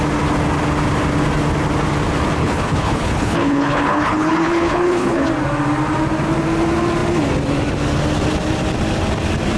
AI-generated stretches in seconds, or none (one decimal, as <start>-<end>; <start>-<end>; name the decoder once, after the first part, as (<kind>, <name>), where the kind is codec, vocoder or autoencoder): 2.4-5.3 (codec, HILCodec)